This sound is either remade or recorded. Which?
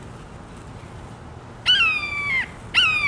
recorded